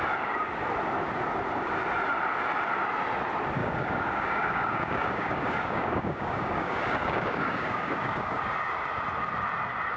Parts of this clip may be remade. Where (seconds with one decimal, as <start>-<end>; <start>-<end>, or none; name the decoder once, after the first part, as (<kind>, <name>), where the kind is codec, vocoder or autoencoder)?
3.6-8.4 (codec, DAC)